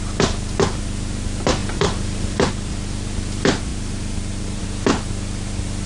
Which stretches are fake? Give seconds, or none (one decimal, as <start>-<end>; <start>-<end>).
1.6-2.5; 3.7-4.6